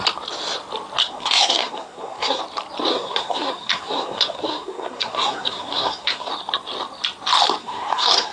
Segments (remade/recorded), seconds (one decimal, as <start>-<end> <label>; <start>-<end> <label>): 0.0-1.0 recorded; 1.0-2.4 remade; 2.4-2.9 recorded; 2.9-6.3 remade; 6.3-7.6 recorded; 7.6-8.3 remade